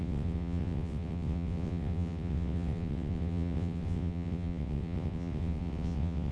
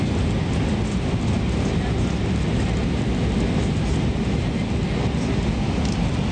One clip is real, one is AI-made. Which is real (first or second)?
second